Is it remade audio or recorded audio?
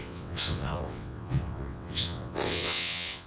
remade